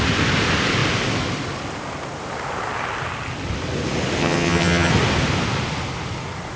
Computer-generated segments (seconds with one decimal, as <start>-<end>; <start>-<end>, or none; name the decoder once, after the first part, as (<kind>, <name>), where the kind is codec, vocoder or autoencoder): 4.2-4.9 (vocoder, HiFi-GAN)